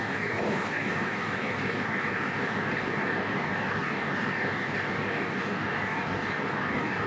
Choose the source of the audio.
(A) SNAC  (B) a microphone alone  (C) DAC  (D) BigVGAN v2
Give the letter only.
C